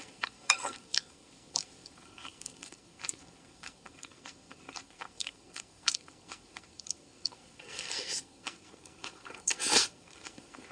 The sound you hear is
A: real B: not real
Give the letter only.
B